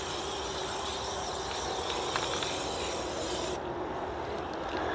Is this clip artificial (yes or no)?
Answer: no